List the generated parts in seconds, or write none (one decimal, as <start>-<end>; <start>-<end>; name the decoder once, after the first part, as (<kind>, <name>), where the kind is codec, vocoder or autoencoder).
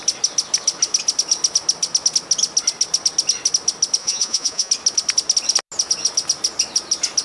4.0-4.7 (vocoder, Vocos)